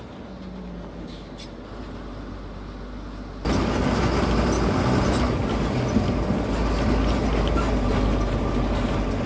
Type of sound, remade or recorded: recorded